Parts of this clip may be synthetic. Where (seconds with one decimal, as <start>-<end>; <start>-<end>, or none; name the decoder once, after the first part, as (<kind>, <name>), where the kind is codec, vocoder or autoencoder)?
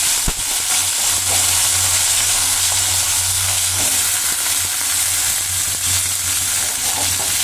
2.1-2.7 (codec, SNAC); 3.3-3.8